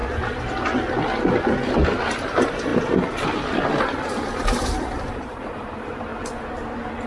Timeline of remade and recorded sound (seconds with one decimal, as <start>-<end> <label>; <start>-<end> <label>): 0.0-2.1 recorded; 2.1-2.7 remade; 2.7-3.7 recorded; 3.7-6.1 remade; 6.1-7.1 recorded